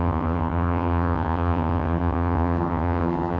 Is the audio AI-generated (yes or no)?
yes